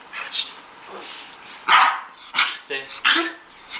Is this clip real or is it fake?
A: real